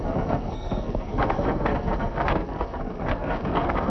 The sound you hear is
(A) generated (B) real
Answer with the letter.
A